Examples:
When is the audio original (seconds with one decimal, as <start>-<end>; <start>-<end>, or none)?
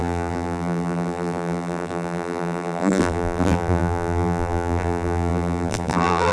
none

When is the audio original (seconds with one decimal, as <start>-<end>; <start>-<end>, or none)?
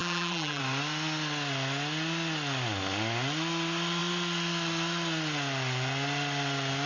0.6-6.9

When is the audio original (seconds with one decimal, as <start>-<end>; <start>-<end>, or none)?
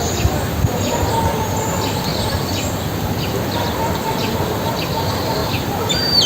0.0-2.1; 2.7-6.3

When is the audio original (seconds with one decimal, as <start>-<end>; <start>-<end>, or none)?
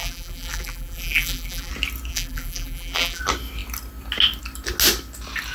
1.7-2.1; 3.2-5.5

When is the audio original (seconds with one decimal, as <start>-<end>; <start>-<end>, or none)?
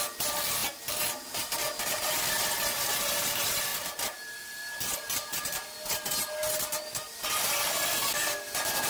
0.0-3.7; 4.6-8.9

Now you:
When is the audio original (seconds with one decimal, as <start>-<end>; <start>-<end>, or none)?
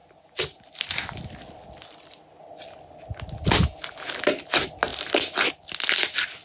0.0-6.4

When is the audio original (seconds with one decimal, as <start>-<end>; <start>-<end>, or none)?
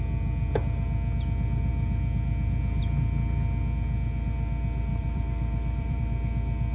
0.0-4.9; 6.0-6.7